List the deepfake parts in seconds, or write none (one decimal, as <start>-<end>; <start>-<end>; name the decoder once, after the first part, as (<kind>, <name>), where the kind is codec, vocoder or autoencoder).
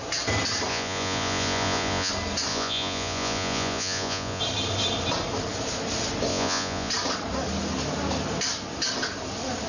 0.7-2.1 (vocoder, Vocos); 2.5-4.4; 6.3-6.9